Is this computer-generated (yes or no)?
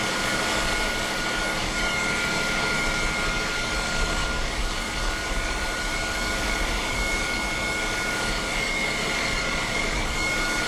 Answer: yes